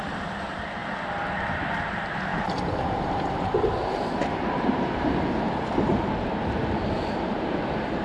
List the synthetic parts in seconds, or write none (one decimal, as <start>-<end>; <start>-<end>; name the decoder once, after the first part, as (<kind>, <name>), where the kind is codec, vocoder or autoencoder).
0.0-0.8 (vocoder, BigVGAN v2); 1.4-8.0